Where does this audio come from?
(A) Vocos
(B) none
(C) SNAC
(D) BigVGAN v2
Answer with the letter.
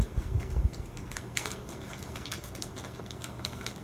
C